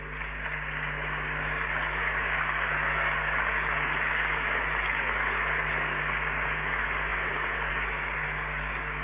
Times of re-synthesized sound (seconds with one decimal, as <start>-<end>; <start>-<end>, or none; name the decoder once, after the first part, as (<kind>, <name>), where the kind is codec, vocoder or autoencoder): 0.0-9.0 (codec, DAC)